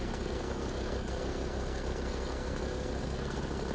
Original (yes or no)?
no